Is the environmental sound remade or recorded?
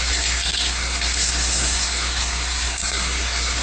remade